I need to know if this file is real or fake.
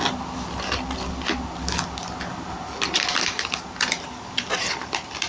real